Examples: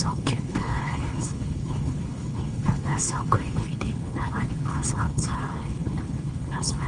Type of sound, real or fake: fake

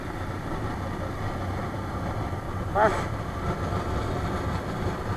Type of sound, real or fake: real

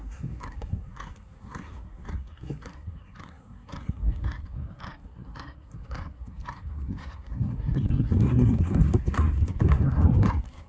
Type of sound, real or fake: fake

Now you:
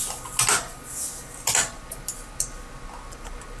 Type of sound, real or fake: real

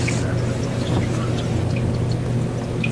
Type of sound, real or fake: real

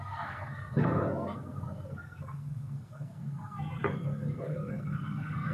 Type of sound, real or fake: fake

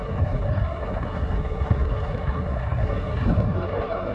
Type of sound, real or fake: fake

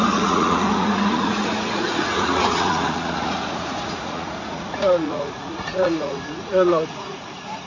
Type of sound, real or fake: fake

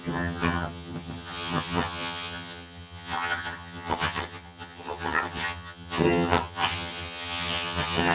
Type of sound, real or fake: fake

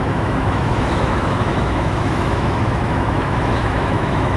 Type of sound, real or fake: fake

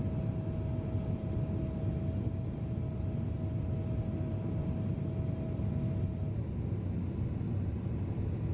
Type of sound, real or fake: real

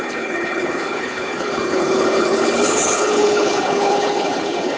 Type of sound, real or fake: fake